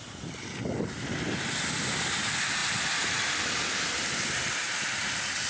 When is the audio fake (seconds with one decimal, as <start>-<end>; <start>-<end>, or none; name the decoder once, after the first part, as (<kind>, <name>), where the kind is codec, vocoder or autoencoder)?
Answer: none